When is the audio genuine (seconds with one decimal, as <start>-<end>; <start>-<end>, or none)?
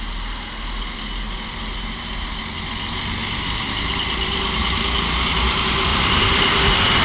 0.0-3.2; 4.4-5.9